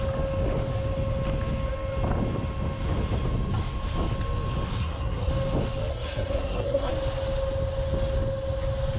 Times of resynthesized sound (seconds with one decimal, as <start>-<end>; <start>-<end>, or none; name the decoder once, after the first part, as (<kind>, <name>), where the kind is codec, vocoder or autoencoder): 4.7-5.3 (codec, SNAC); 5.9-6.9